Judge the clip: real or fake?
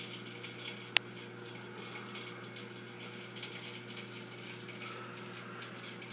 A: real